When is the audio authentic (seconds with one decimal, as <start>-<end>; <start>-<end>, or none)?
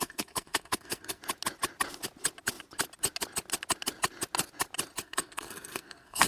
1.2-5.0